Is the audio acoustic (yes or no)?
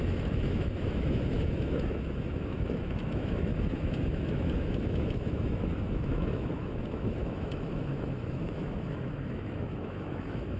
no